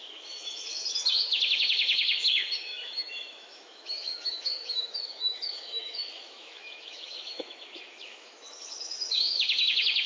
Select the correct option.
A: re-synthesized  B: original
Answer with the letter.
A